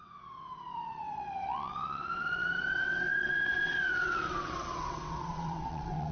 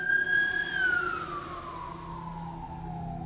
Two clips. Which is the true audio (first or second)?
second